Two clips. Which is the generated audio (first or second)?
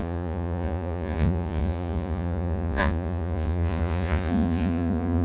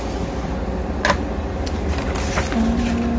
first